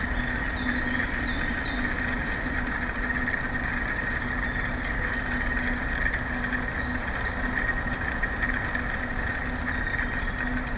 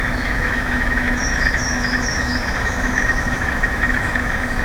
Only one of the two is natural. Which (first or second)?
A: first